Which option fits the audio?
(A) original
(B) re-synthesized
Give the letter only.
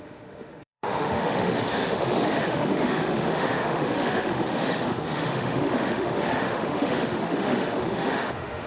B